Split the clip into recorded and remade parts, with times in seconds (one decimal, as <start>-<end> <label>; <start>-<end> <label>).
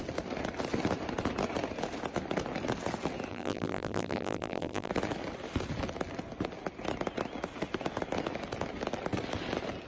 0.0-3.3 recorded; 3.3-4.9 remade; 4.9-9.9 recorded